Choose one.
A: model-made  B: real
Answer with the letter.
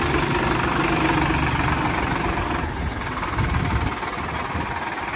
B